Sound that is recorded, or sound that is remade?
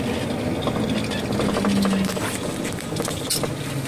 recorded